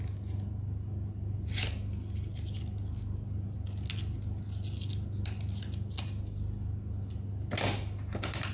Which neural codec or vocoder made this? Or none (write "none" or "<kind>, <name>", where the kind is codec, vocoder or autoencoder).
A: none